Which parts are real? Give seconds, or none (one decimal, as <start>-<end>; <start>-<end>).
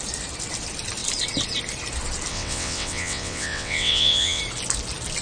0.0-2.3; 4.4-5.2